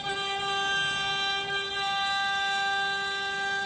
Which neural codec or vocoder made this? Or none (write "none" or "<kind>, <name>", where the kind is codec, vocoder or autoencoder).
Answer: none